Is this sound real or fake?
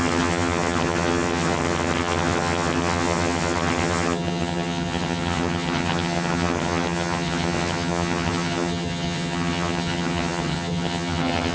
fake